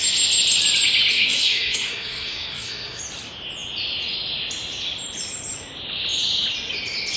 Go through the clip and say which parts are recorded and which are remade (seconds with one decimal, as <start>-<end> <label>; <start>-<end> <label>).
0.0-1.1 recorded; 1.1-3.0 remade; 3.0-7.2 recorded